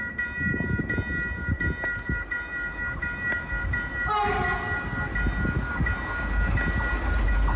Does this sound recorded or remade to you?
recorded